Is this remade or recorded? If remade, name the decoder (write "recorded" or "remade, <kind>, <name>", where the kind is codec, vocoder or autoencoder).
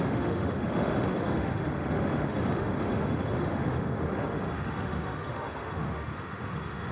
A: remade, autoencoder, DAC-VAE